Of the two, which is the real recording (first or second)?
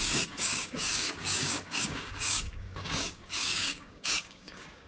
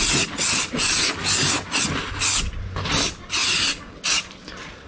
second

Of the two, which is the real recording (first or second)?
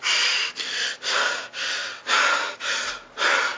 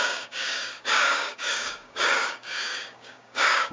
first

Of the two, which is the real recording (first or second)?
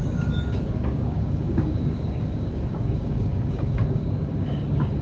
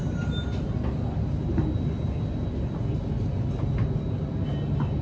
second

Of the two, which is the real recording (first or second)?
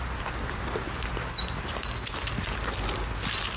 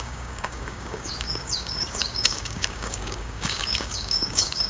first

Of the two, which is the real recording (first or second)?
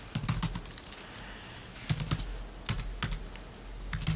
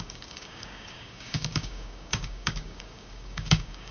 first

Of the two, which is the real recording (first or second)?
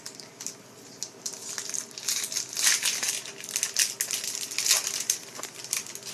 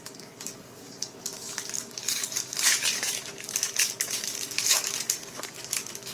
first